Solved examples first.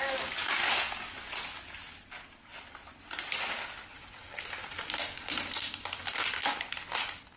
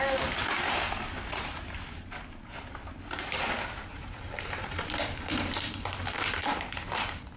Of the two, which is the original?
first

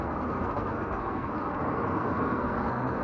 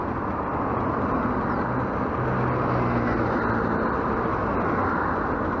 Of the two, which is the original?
second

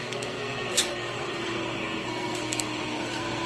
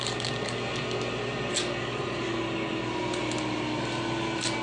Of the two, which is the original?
second